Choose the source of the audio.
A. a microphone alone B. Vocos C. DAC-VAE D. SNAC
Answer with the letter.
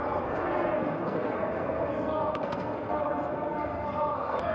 D